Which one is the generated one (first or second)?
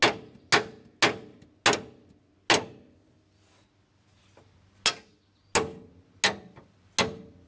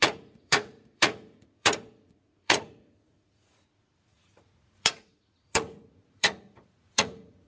second